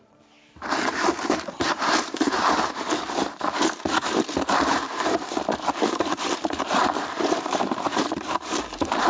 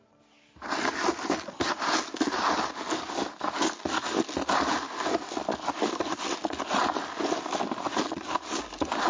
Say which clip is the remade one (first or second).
first